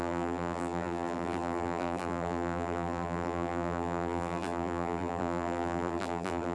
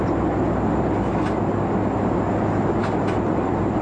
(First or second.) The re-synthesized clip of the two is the first